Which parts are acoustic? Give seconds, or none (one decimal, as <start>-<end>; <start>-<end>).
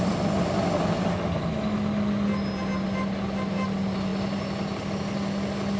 0.0-5.8